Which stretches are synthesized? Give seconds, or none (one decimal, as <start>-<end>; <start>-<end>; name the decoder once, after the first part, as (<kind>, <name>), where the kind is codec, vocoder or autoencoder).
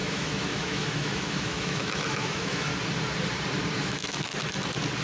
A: 0.0-2.7 (autoencoder, DAC-VAE); 3.8-4.3